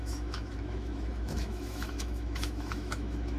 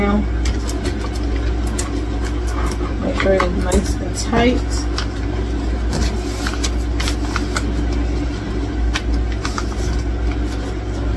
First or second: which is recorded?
second